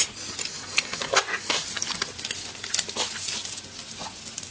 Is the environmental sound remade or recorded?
recorded